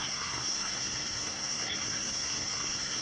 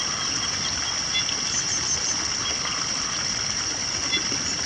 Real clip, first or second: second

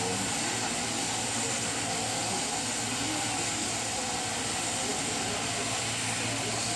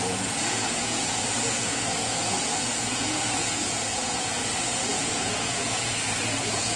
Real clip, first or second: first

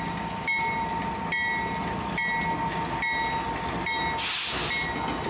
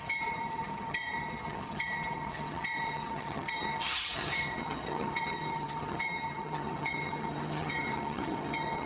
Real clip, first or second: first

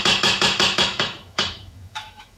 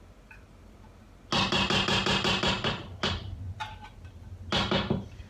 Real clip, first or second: second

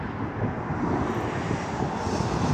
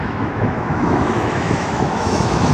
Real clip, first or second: first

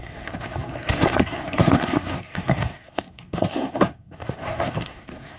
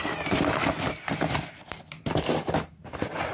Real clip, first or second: second